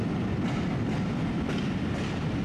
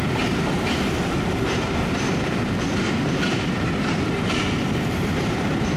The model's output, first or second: second